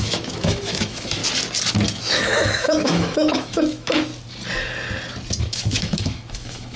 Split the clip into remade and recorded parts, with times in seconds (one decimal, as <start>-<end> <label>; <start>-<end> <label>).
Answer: 0.0-1.2 remade; 1.2-1.9 recorded; 1.9-4.1 remade; 4.1-5.4 recorded; 5.4-6.8 remade